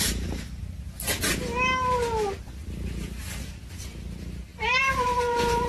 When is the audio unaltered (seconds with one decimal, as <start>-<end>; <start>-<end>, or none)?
0.0-4.5